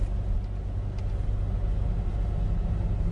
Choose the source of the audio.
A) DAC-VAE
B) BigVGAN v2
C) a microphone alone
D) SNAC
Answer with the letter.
C